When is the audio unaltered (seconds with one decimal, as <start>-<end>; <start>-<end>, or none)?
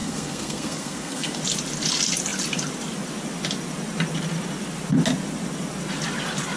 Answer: 1.4-6.6